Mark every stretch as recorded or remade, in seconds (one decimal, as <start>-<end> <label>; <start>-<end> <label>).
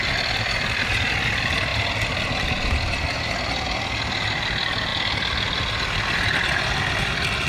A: 0.0-7.5 recorded